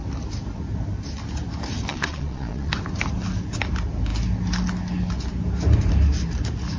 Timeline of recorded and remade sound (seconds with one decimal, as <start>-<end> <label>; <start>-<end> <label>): 0.0-1.9 recorded; 1.9-2.7 remade; 2.7-6.8 recorded